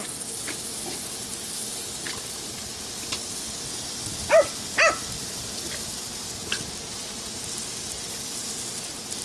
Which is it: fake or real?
real